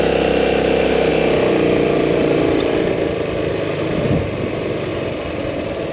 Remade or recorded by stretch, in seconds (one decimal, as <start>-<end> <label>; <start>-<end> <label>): 0.0-5.9 recorded